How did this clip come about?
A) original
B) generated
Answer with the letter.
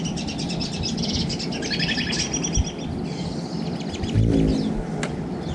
A